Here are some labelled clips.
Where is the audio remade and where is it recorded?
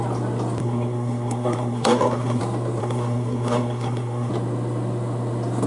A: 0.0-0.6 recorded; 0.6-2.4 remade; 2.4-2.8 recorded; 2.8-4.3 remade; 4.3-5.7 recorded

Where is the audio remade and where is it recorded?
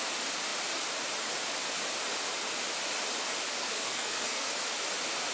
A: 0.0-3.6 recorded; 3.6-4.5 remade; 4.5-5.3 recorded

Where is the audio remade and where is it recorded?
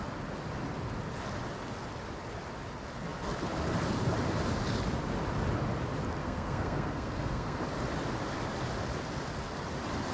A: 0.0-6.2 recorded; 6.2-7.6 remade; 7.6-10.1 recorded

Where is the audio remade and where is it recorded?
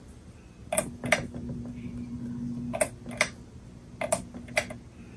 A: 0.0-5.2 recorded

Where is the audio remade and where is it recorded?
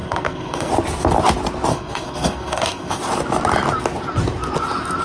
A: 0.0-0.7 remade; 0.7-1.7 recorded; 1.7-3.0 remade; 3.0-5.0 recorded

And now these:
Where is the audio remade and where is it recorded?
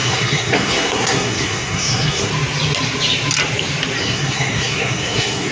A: 0.0-2.3 remade; 2.3-4.0 recorded; 4.0-5.5 remade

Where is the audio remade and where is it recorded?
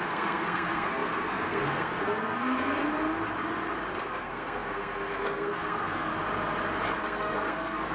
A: 0.0-2.8 remade; 2.8-4.0 recorded; 4.0-6.1 remade; 6.1-7.0 recorded; 7.0-7.9 remade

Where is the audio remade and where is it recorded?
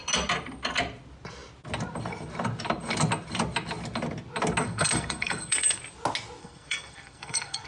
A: 0.0-4.6 recorded; 4.6-5.8 remade; 5.8-6.4 recorded; 6.4-7.7 remade